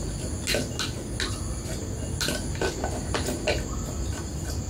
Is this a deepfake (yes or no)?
no